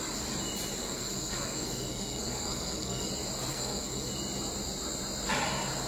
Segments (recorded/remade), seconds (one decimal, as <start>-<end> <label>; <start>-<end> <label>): 0.0-0.8 recorded; 0.8-3.1 remade; 3.1-3.5 recorded; 3.5-4.1 remade; 4.1-5.9 recorded